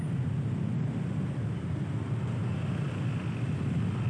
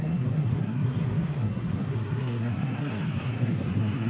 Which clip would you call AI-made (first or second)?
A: second